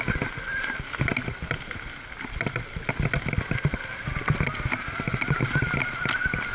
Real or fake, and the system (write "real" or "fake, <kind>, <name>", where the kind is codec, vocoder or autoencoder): real